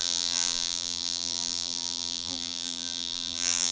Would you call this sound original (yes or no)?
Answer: no